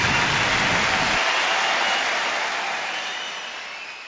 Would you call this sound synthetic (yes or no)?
no